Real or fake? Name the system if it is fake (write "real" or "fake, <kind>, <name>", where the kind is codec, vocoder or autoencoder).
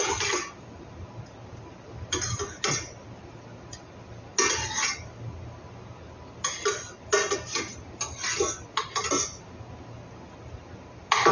real